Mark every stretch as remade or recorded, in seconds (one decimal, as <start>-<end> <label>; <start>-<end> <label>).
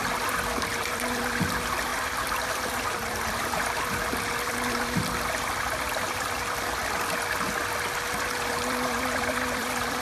0.0-0.7 recorded; 0.7-6.8 remade; 6.8-8.5 recorded; 8.5-10.0 remade